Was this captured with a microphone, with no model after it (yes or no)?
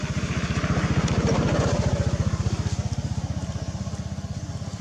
yes